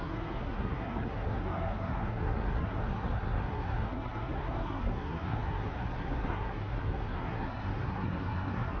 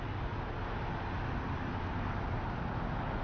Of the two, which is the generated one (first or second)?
first